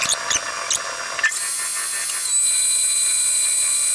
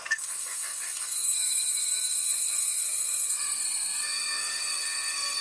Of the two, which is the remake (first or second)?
second